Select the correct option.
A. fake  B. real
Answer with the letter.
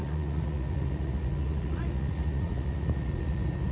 A